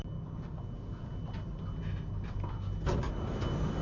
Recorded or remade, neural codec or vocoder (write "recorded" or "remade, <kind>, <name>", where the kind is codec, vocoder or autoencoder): recorded